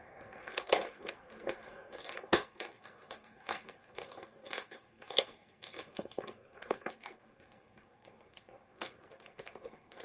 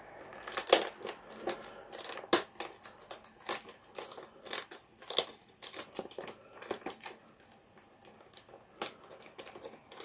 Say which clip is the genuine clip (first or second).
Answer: second